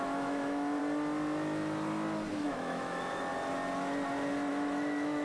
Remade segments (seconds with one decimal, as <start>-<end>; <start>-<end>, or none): 0.0-0.8; 2.3-3.3; 4.5-5.2